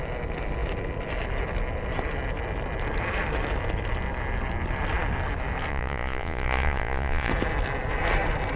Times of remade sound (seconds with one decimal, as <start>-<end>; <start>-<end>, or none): 5.7-7.3